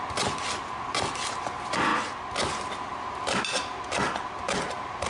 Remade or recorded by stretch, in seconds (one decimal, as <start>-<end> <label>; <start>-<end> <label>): 0.0-5.1 recorded